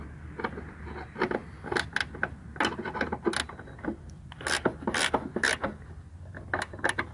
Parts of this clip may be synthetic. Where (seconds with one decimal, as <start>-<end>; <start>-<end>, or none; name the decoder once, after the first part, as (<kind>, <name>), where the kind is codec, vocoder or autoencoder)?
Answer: none